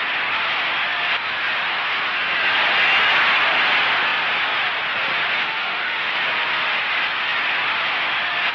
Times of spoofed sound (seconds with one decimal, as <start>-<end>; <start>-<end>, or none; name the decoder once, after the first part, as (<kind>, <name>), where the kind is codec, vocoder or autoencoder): 5.4-6.1 (autoencoder, DAC-VAE)